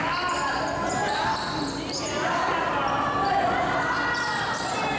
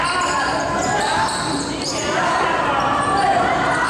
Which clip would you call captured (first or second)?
first